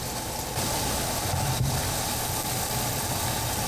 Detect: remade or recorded recorded